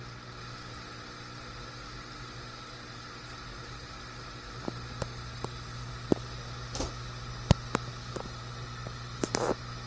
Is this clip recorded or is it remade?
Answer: recorded